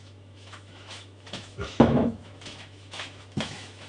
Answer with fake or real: fake